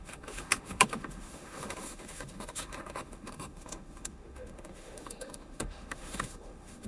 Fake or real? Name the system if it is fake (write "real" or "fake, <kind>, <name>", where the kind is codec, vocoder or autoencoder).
fake, autoencoder, DAC-VAE